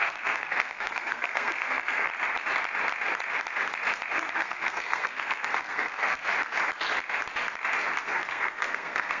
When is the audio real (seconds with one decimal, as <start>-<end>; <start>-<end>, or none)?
2.1-4.3; 6.3-8.0

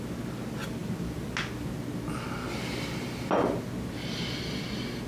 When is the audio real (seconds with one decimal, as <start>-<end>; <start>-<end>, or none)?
0.0-5.1

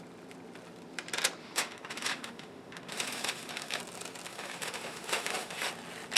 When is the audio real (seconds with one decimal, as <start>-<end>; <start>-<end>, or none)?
0.0-1.4; 3.8-4.3; 5.7-6.2

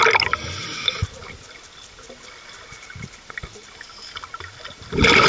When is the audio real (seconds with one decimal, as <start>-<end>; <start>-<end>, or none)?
0.0-5.3